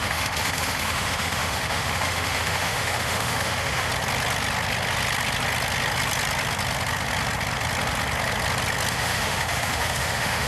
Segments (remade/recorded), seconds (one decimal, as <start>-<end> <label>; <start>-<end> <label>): 0.0-3.9 remade; 3.9-8.9 recorded; 8.9-10.5 remade